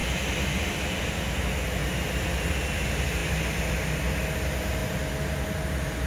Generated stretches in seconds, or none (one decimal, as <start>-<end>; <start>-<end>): 1.8-2.8